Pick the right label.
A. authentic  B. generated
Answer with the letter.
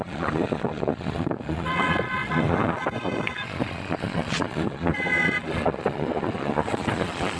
B